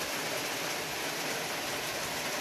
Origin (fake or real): real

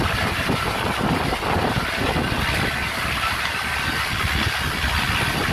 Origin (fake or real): real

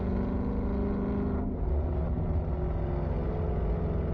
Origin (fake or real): real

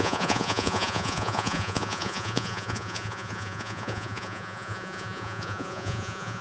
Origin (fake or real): fake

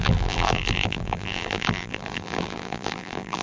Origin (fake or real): fake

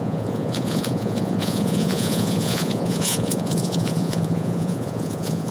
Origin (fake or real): fake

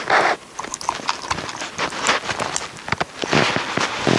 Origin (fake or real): real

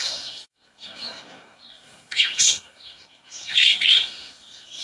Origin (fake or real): fake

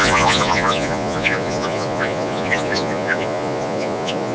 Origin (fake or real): fake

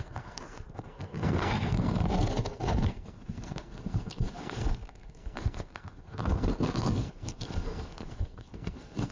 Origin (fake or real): fake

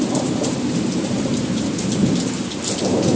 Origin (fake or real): fake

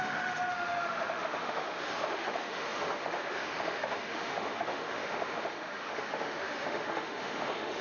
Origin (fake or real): fake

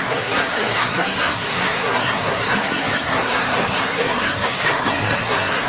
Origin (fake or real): fake